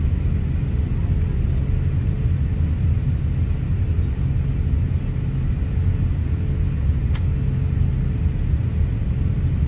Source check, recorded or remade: recorded